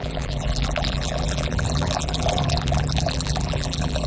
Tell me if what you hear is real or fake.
fake